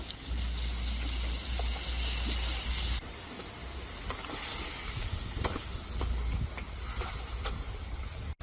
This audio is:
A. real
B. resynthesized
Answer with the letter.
A